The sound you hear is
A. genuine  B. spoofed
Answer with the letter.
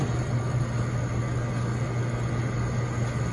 A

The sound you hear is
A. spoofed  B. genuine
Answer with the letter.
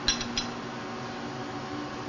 B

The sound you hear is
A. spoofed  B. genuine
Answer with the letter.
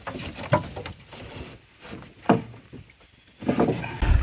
B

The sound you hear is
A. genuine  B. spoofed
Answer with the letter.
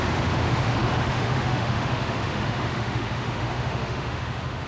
B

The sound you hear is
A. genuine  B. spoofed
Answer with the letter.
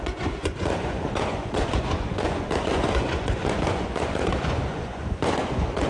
B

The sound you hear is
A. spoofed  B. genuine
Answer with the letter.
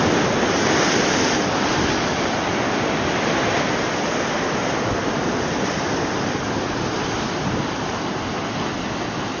B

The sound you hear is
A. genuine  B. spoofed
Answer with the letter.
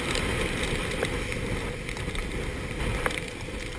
A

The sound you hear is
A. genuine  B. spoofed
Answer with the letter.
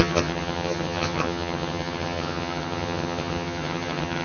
B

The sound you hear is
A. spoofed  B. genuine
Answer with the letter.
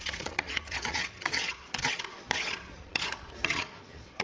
A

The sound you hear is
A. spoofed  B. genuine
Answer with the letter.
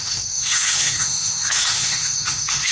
A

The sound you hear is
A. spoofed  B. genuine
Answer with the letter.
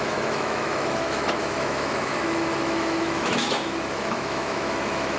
A